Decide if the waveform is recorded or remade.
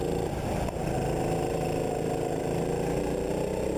recorded